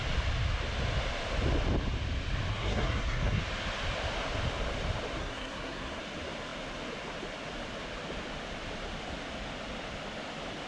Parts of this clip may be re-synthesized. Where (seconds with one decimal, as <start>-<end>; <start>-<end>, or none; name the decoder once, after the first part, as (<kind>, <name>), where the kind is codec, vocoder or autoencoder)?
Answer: 2.5-3.4 (codec, SNAC); 5.2-6.0